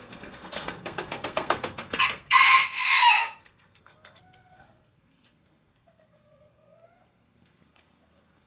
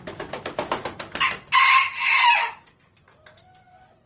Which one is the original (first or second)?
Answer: second